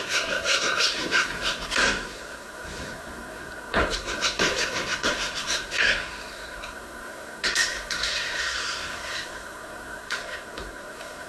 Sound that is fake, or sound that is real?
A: fake